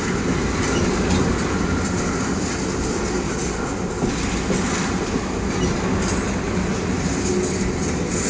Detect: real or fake real